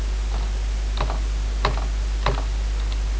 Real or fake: real